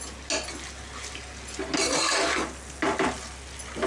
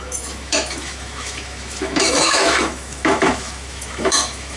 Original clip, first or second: first